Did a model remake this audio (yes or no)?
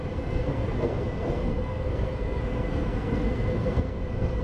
yes